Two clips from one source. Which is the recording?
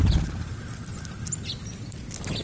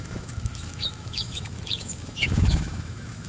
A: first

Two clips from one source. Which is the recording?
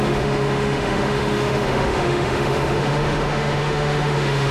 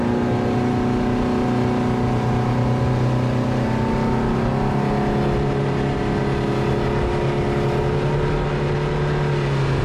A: second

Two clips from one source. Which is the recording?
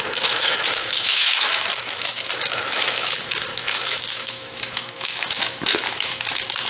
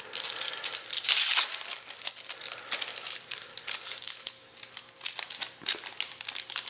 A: second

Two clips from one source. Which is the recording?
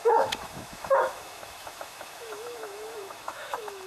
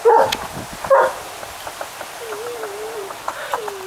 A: second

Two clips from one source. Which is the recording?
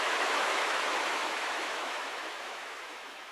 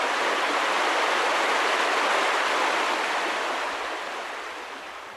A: second